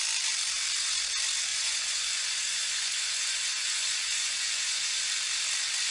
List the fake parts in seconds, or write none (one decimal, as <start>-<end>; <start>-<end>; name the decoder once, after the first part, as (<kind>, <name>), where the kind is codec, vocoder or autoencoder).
1.5-5.0 (vocoder, Vocos)